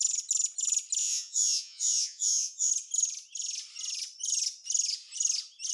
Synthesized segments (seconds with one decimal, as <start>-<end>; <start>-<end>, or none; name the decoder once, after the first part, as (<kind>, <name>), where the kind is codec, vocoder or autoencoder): 1.0-2.7 (vocoder, Vocos)

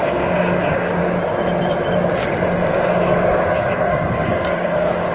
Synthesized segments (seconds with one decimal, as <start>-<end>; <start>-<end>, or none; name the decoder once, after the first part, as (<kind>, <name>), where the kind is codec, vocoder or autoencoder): 0.0-1.0 (codec, DAC); 2.7-5.1